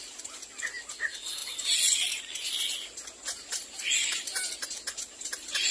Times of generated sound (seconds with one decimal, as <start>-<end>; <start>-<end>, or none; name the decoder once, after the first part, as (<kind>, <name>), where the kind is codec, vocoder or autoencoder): none